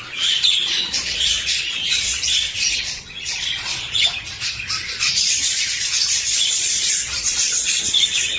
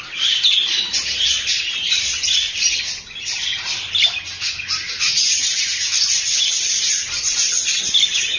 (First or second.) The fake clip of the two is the first